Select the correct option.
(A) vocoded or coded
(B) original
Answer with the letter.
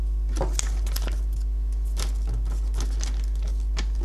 B